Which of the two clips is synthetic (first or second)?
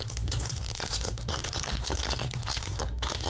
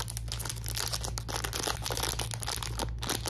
first